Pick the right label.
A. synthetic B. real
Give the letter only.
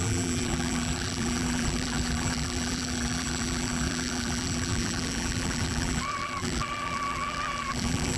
A